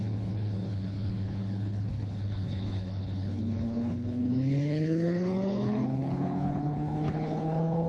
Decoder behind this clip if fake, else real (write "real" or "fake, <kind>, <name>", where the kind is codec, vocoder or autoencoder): fake, codec, HILCodec